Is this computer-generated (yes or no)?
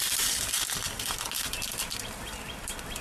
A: no